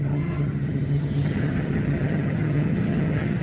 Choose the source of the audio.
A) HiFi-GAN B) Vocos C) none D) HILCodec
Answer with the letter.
A